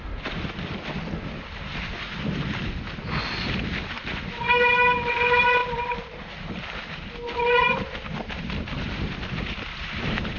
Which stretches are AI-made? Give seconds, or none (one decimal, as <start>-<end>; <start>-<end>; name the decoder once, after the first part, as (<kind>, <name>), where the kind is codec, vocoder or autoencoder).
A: none